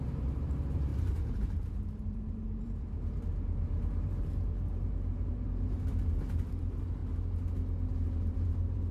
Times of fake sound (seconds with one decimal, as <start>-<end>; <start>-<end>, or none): 0.0-7.0; 7.9-8.9